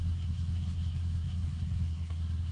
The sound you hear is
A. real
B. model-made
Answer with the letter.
B